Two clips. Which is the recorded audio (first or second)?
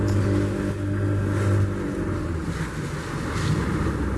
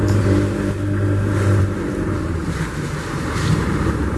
first